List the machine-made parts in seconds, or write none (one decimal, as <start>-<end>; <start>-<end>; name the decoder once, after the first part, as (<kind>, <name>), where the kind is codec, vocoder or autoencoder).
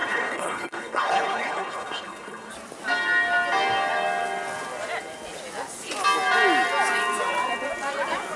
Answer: 0.0-2.5 (codec, HILCodec)